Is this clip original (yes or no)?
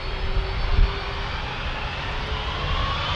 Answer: yes